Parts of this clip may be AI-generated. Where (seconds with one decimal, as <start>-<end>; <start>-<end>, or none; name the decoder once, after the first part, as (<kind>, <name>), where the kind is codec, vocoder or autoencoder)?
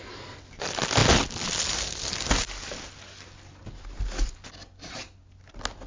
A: none